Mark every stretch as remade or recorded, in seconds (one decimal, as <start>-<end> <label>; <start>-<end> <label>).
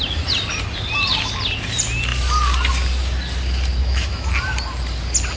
0.0-3.8 recorded; 3.8-4.3 remade; 4.3-5.4 recorded